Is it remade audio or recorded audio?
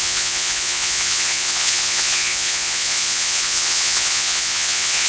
remade